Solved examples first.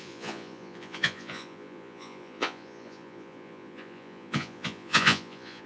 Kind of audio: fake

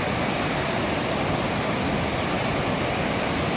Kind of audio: real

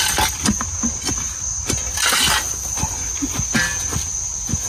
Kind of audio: real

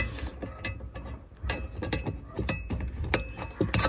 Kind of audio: real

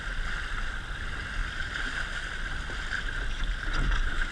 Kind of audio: real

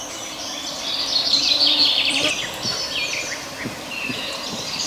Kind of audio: real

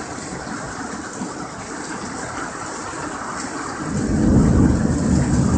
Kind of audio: real